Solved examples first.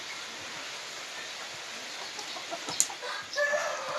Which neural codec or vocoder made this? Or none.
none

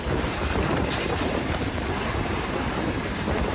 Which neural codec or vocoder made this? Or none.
vocoder, BigVGAN v2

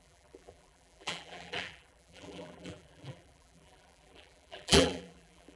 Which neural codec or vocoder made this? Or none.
vocoder, BigVGAN v2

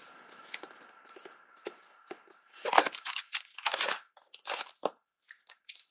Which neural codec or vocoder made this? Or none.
none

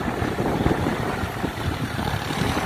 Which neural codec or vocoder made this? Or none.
vocoder, BigVGAN v2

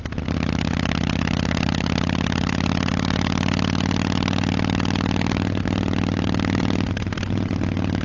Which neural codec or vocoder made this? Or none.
none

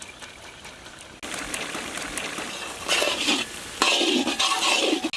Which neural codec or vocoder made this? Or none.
none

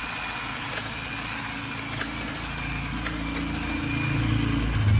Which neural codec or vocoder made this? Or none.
none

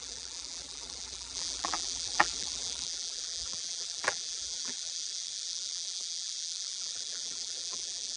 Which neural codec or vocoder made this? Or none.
vocoder, BigVGAN v2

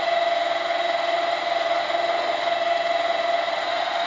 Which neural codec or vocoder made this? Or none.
none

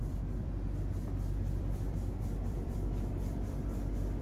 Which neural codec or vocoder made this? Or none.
vocoder, BigVGAN v2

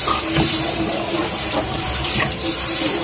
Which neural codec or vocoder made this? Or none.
vocoder, BigVGAN v2